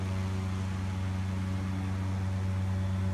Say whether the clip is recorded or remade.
recorded